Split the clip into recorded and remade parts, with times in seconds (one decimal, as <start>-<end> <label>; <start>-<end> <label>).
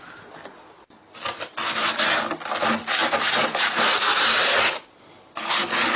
0.0-3.0 recorded; 3.0-4.7 remade; 4.7-6.0 recorded